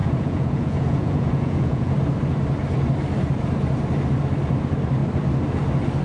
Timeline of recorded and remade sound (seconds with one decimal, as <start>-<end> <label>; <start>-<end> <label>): 0.0-1.9 remade; 1.9-6.0 recorded